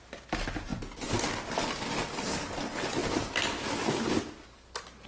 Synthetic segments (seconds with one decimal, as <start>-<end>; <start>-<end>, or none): none